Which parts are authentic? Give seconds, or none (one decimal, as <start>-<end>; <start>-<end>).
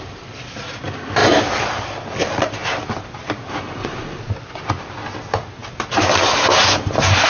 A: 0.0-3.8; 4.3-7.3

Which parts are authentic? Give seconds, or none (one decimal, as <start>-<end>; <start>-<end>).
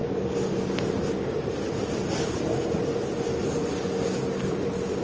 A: 0.0-5.0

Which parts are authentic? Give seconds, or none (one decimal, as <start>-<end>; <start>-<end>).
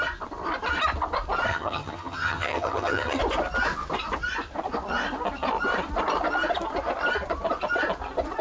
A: 0.0-1.5; 3.2-8.4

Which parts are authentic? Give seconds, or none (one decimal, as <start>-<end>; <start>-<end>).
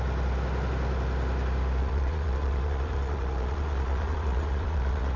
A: 0.0-1.8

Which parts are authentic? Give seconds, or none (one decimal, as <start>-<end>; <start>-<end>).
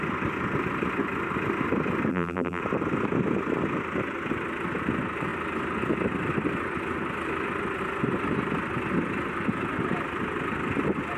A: 0.0-2.1; 2.6-11.2